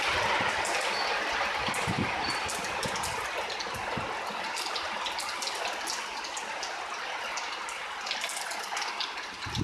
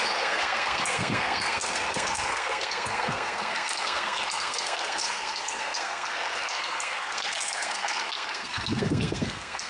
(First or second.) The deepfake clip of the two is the second